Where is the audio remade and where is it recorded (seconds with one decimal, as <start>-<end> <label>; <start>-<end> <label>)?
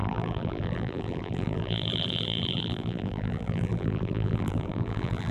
0.0-5.3 remade